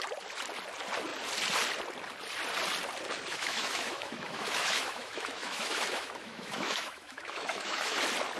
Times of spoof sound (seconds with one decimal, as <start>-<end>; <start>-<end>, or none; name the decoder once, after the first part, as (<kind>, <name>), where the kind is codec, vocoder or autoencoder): 3.3-8.0 (autoencoder, DAC-VAE)